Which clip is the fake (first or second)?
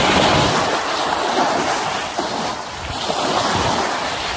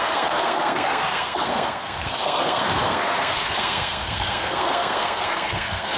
second